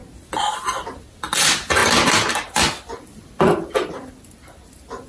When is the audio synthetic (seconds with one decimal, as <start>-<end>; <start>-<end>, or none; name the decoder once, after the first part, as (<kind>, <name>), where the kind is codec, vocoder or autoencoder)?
1.8-5.1 (vocoder, BigVGAN v2)